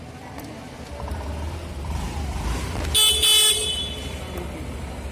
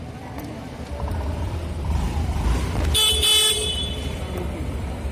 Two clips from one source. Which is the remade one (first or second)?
second